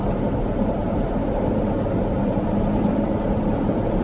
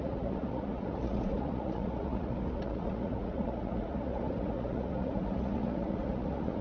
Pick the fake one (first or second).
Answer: second